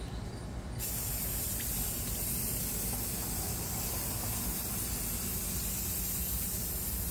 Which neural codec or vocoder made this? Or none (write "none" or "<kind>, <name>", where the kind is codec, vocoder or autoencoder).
none